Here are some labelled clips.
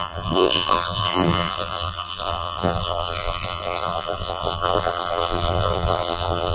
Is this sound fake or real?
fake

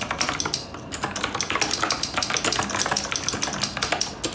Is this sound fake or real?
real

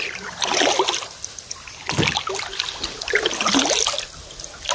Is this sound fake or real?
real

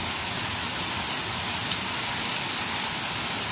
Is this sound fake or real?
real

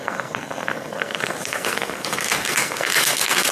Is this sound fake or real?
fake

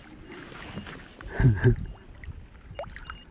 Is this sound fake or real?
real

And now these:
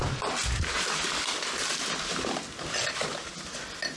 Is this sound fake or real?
real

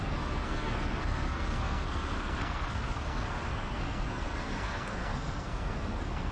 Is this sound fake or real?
fake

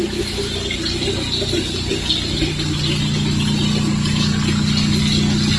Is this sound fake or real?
real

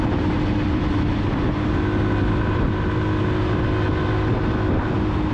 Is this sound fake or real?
real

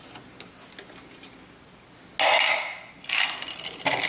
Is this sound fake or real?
real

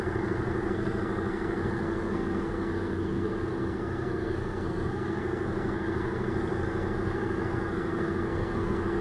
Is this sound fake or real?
fake